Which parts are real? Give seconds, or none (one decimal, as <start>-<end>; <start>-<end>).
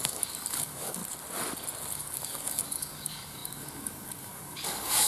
1.0-1.9